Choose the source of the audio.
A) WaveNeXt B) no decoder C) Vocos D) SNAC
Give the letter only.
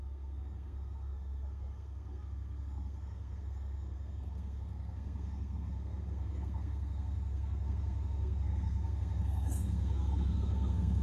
D